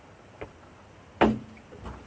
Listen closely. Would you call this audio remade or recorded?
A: recorded